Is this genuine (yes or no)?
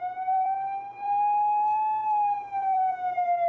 no